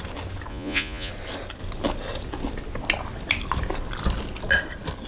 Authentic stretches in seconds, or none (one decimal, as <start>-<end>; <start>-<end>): 0.0-0.5; 1.1-5.1